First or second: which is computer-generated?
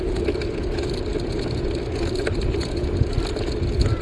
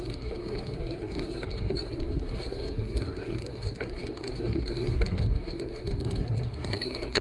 second